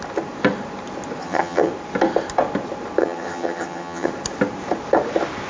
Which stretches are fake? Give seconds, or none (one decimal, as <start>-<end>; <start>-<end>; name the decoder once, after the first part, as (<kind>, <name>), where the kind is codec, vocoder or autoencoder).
1.2-1.7 (vocoder, HiFi-GAN); 3.0-4.1